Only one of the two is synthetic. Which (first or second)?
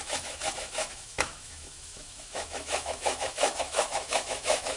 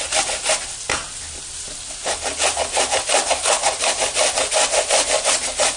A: first